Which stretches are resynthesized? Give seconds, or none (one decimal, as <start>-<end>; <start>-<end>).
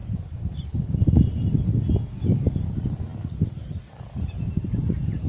none